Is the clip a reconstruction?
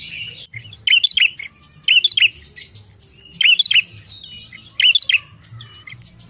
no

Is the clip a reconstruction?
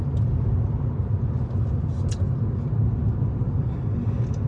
no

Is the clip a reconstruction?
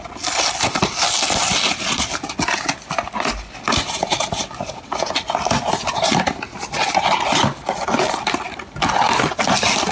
no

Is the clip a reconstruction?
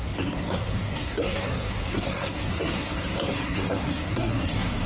yes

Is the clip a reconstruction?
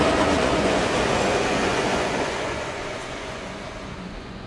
yes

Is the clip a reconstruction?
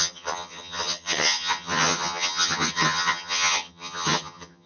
yes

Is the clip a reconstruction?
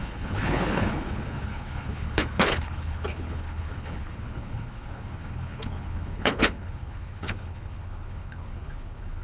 yes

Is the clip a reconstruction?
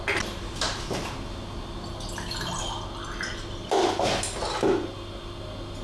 no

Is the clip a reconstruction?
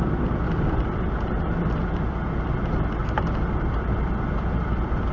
no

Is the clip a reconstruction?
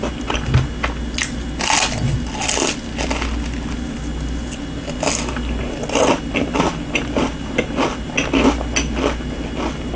no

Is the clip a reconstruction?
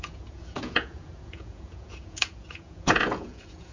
yes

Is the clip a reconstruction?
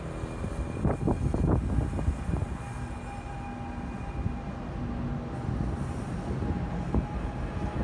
no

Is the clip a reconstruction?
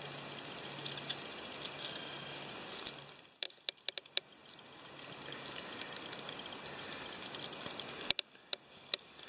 no